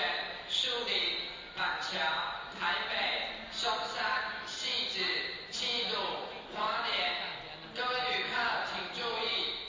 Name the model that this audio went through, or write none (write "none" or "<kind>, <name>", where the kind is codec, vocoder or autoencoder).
none